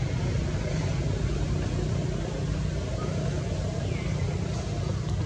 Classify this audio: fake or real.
real